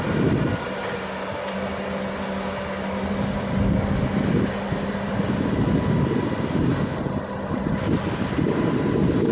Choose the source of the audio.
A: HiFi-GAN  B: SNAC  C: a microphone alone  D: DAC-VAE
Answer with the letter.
C